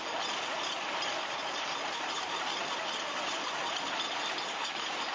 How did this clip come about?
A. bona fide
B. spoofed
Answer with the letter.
A